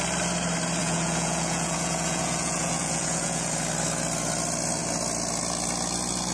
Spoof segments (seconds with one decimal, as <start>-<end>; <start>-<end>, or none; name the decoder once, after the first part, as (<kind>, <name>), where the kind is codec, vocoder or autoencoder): 0.8-3.5 (vocoder, Vocos)

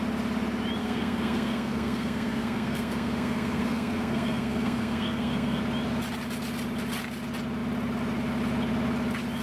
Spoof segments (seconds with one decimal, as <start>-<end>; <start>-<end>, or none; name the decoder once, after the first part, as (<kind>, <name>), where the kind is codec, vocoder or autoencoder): 0.8-5.6 (codec, SNAC)